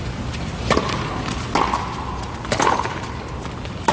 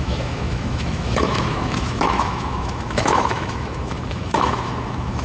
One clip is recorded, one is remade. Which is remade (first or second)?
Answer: second